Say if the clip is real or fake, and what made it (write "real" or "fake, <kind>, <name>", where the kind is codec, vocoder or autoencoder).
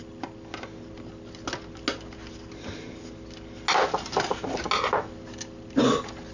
real